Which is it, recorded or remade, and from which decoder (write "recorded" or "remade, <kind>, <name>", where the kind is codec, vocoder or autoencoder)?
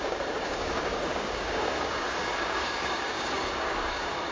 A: remade, codec, DAC